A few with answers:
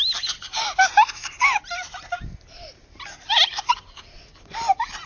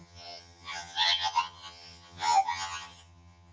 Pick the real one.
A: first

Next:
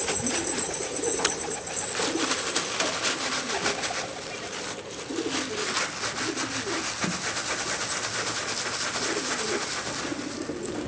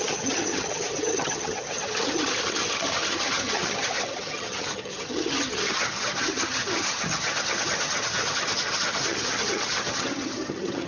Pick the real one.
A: first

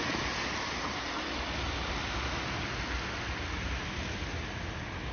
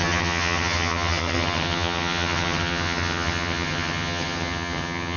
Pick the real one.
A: first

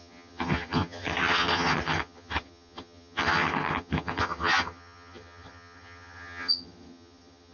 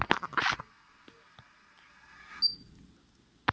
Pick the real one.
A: second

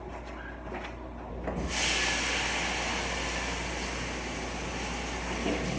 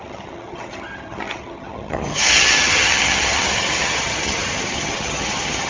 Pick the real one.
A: first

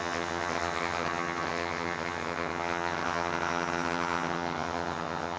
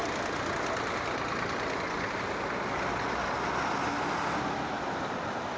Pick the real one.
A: second